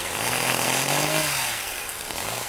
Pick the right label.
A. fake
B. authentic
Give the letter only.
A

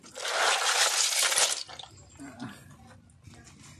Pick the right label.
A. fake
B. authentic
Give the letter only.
B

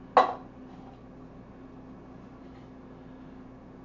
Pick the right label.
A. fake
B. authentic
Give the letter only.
B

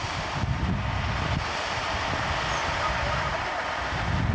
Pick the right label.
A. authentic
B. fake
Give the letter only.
A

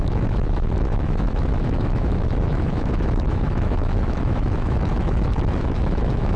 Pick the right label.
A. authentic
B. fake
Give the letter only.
B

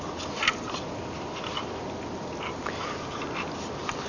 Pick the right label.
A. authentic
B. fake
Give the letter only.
A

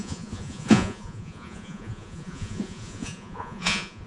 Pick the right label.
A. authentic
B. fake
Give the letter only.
B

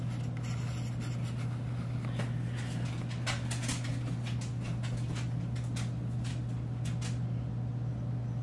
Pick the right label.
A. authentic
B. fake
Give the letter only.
A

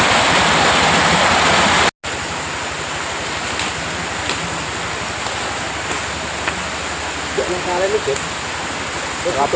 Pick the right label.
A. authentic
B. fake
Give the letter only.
A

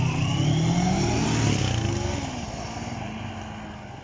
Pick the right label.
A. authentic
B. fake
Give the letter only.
A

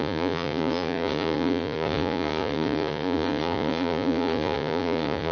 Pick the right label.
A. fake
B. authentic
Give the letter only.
A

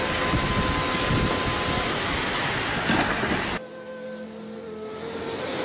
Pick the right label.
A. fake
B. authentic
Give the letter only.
B